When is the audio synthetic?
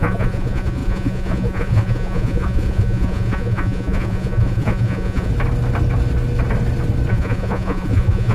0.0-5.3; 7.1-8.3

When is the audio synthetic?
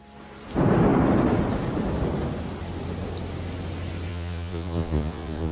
4.1-5.5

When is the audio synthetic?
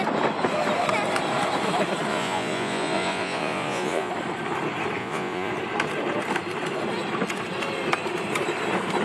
2.1-4.1; 5.0-5.5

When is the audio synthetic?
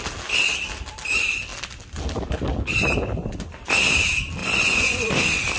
4.4-5.1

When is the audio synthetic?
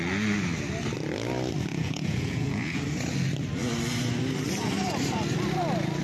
1.7-2.8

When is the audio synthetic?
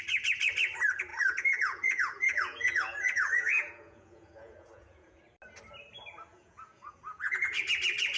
1.1-5.2; 6.3-7.5